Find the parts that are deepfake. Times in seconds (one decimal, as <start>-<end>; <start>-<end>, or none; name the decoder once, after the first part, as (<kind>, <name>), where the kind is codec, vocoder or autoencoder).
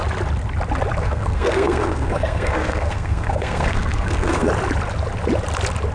1.0-4.5 (codec, SNAC)